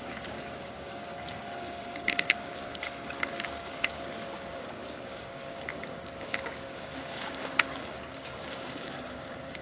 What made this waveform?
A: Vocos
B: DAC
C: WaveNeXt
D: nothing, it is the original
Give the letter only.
B